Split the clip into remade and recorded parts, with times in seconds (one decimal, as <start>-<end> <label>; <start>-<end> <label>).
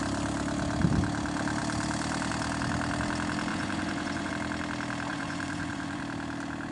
0.0-3.5 recorded; 3.5-4.3 remade; 4.3-5.1 recorded; 5.1-6.0 remade; 6.0-6.7 recorded